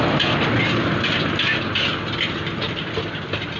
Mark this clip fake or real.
real